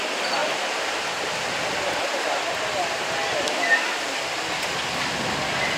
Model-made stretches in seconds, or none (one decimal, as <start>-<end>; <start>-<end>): none